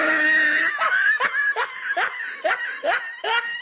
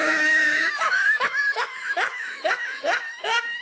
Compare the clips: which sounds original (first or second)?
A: first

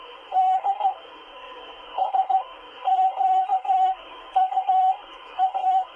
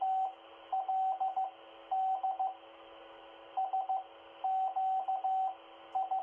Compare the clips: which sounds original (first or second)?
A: second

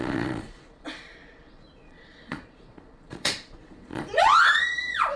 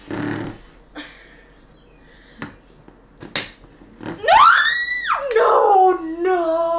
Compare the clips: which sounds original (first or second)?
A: second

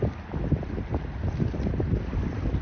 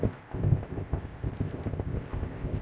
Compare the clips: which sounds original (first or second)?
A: first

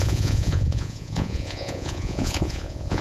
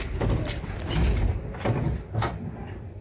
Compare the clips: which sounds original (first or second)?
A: second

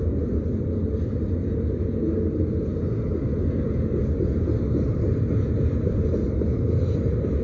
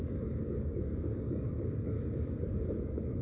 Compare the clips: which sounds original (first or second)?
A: first